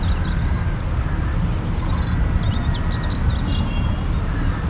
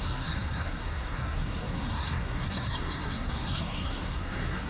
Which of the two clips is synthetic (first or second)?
second